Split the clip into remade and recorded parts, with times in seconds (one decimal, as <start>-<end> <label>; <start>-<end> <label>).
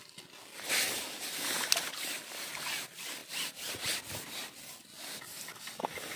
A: 0.0-6.2 recorded